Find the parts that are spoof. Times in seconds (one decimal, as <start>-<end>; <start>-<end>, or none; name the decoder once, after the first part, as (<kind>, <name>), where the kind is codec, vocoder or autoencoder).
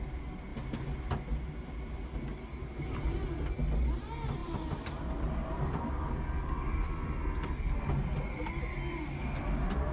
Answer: 4.4-6.1 (vocoder, BigVGAN v2)